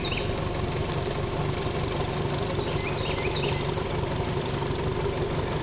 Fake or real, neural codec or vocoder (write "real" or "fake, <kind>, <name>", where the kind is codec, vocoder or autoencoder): real